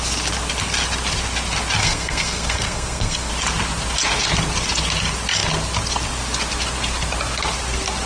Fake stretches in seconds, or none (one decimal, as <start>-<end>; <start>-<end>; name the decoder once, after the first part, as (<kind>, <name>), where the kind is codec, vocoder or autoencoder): 1.8-3.3 (codec, SNAC)